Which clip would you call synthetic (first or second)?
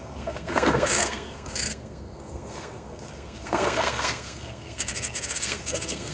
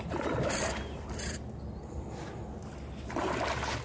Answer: first